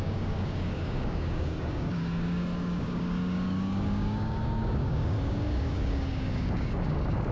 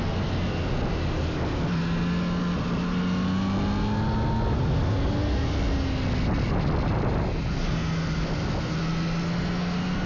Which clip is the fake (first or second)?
first